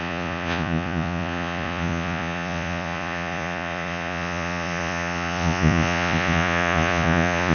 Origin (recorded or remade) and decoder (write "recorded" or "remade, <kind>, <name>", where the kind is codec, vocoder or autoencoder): remade, vocoder, Vocos